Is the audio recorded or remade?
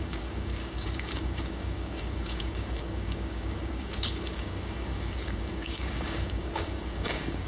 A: remade